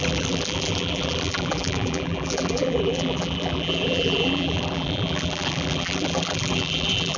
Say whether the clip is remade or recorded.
remade